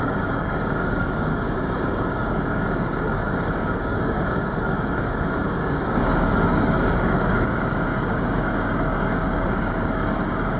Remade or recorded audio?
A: remade